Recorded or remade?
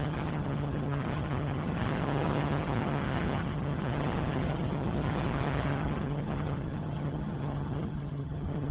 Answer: remade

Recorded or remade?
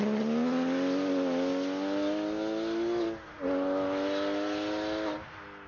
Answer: recorded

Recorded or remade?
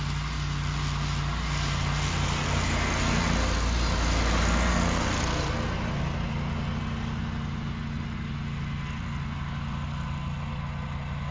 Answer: recorded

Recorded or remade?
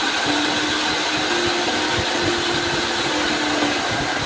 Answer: recorded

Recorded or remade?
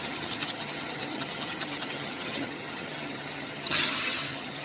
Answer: remade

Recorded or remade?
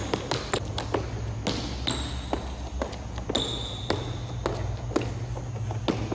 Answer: recorded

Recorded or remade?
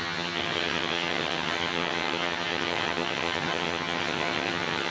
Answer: remade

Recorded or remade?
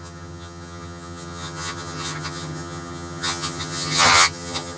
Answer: remade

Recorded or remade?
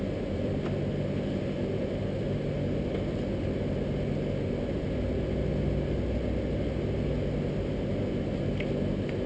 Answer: recorded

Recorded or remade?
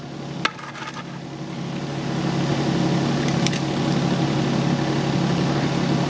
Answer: recorded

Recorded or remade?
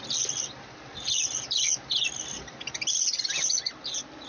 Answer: recorded